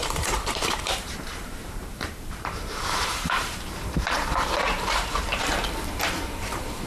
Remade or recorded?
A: remade